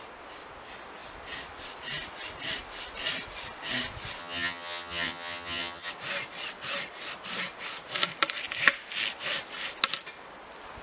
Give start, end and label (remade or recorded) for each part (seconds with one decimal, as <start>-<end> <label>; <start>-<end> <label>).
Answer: 0.0-4.2 recorded; 4.2-5.9 remade; 5.9-10.8 recorded